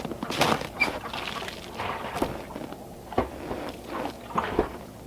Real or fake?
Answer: real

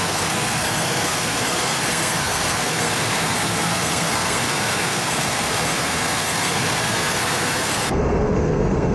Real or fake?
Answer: fake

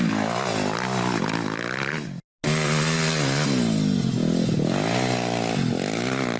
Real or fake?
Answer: real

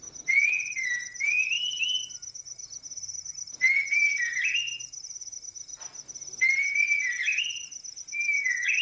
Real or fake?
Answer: real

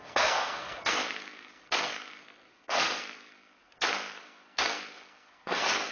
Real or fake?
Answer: fake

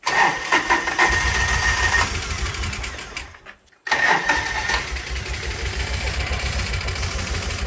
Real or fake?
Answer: real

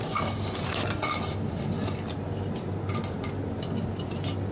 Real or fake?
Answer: real